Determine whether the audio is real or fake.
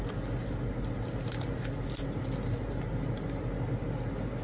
real